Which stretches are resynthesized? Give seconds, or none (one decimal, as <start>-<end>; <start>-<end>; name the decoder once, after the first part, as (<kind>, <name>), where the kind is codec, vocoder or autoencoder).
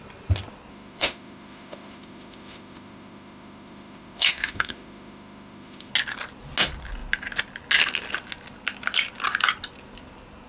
0.7-5.9 (autoencoder, DAC-VAE)